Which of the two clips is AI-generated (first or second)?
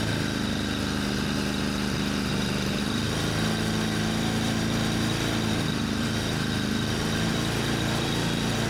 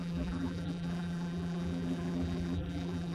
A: second